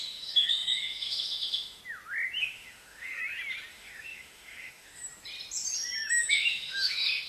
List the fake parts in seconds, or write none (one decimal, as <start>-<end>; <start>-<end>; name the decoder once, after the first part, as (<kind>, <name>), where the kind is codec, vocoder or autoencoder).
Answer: 0.0-1.8 (autoencoder, DAC-VAE); 2.4-3.2; 3.7-5.0; 6.3-7.3